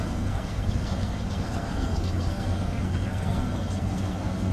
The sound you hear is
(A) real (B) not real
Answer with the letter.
B